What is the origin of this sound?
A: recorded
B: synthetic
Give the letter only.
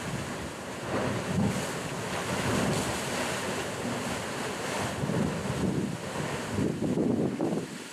A